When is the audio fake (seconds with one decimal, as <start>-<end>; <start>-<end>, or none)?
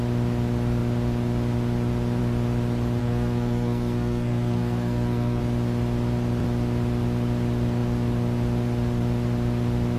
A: 3.0-5.4